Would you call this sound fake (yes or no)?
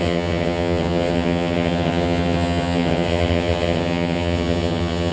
yes